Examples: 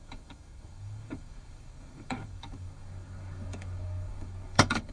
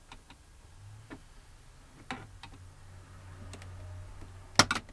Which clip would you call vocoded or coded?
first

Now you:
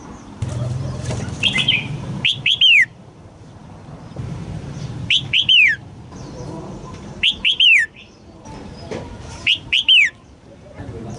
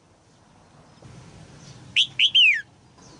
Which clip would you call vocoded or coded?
first